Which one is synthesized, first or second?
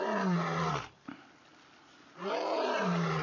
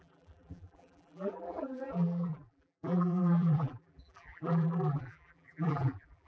second